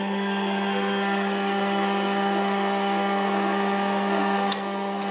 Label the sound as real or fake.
fake